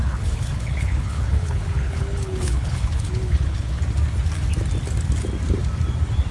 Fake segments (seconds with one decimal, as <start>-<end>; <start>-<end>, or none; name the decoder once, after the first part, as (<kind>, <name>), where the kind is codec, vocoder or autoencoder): 0.0-3.8 (codec, HILCodec)